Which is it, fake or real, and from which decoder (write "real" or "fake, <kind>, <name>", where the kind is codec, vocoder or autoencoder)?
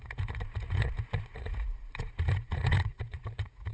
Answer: fake, vocoder, Vocos